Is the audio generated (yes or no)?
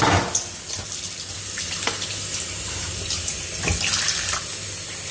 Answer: no